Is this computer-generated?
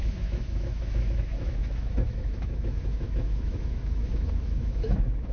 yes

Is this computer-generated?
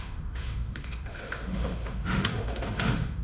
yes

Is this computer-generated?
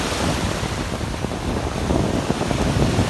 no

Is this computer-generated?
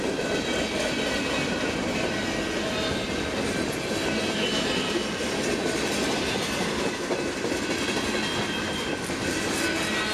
no